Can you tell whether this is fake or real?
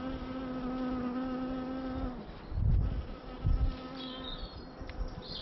real